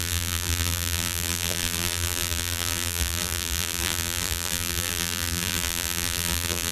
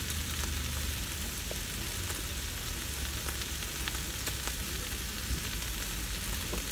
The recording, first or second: second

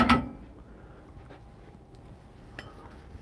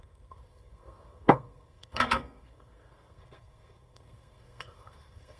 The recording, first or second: first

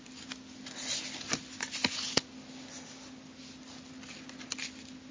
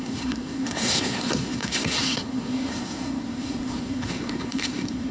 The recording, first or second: first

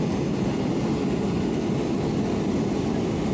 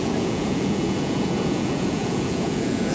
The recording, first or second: first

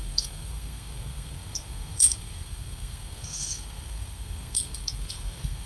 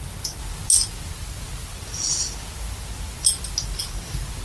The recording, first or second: second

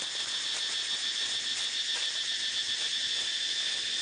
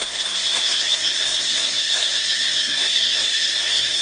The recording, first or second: first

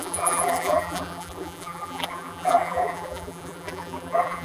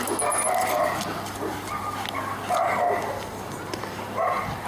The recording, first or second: second